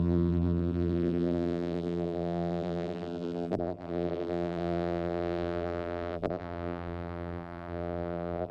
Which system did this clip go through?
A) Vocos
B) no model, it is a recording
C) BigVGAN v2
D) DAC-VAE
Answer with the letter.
C